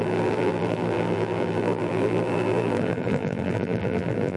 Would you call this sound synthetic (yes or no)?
yes